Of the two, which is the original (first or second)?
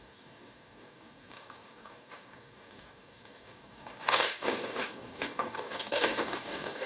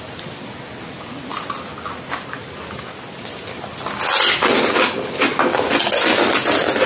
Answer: second